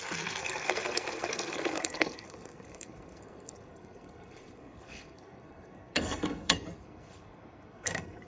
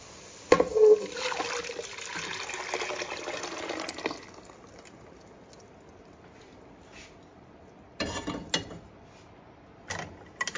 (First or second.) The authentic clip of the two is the second